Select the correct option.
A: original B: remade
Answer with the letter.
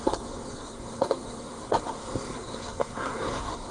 B